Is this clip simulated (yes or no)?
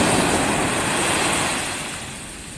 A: no